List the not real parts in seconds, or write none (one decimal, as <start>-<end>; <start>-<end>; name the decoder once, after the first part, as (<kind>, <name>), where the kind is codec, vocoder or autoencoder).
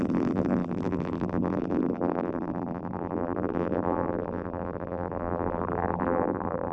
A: 0.0-6.7 (vocoder, BigVGAN v2)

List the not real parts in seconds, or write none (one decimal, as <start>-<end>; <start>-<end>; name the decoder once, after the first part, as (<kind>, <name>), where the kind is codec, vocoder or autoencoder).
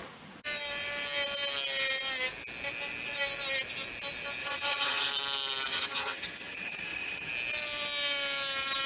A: 4.4-5.1 (vocoder, HiFi-GAN); 5.7-7.3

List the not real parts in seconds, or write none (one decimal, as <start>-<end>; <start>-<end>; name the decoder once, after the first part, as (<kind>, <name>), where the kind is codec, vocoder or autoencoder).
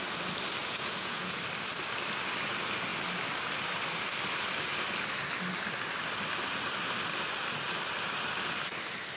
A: 0.6-1.4 (vocoder, Vocos)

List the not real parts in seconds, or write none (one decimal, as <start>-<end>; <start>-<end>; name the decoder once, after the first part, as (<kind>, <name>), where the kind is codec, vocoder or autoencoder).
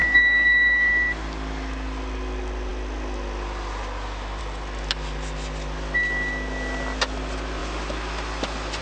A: 0.0-0.9 (codec, DAC)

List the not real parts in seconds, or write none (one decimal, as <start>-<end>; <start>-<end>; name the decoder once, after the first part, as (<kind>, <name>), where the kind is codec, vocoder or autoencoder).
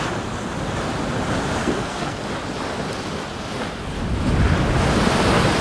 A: 1.6-2.2 (codec, SNAC)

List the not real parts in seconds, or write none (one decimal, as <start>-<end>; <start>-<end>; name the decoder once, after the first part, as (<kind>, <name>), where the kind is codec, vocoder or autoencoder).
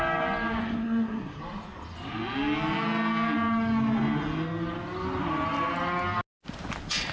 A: 0.6-1.4 (codec, SNAC)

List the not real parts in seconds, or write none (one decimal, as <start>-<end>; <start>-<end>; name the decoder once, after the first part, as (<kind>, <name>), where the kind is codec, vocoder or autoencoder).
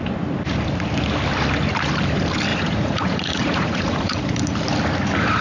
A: 2.5-4.2 (vocoder, Vocos)